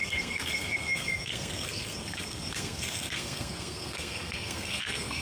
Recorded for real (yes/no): no